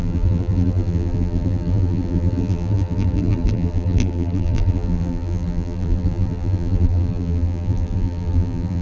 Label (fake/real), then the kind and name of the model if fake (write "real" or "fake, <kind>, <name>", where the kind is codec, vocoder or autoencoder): fake, vocoder, BigVGAN v2